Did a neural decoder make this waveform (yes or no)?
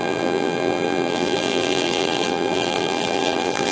yes